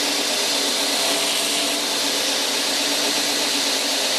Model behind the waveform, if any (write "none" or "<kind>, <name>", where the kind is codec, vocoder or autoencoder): none